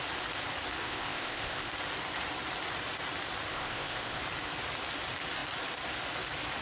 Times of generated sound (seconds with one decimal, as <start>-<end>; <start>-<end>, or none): 0.8-1.7; 3.5-4.2